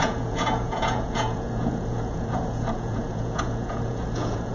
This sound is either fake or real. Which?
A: fake